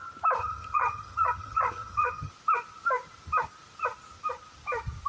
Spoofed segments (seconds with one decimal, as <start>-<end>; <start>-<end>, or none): 0.4-2.3